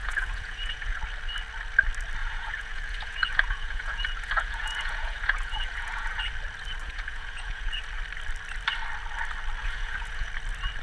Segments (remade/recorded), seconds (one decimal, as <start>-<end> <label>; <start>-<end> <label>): 0.0-1.0 remade; 1.0-2.2 recorded; 2.2-6.2 remade; 6.2-6.8 recorded; 6.8-7.8 remade; 7.8-9.6 recorded; 9.6-10.3 remade; 10.3-10.8 recorded